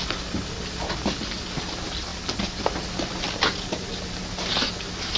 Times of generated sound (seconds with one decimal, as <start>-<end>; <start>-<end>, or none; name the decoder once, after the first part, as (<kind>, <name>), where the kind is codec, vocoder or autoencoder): none